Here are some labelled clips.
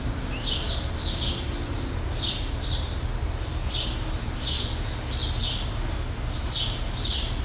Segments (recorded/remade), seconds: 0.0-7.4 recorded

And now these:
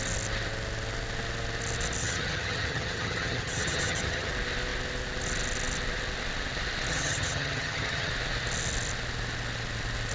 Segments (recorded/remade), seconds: 0.0-2.0 recorded; 2.0-4.3 remade; 4.3-6.9 recorded; 6.9-8.1 remade; 8.1-10.1 recorded

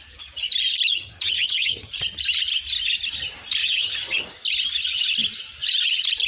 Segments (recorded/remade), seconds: 0.0-0.9 recorded; 0.9-1.9 remade; 1.9-3.6 recorded; 3.6-4.2 remade; 4.2-6.3 recorded

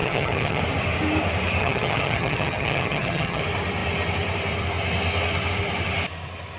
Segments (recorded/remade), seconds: 0.0-0.6 remade; 0.6-1.6 recorded; 1.6-3.4 remade; 3.4-6.6 recorded

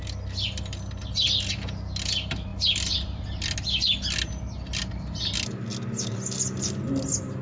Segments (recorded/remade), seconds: 0.0-7.4 recorded